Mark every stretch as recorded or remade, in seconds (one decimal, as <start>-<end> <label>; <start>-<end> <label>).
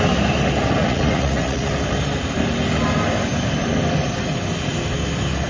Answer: 0.0-0.8 recorded; 0.8-1.7 remade; 1.7-5.5 recorded